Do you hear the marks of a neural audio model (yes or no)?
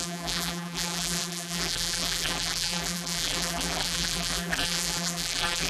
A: yes